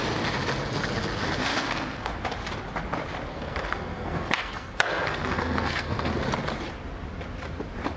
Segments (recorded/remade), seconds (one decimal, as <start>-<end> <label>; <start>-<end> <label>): 0.0-1.5 recorded; 1.5-2.1 remade; 2.1-3.3 recorded; 3.3-6.1 remade; 6.1-8.0 recorded